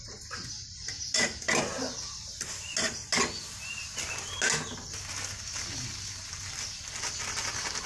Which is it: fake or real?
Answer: real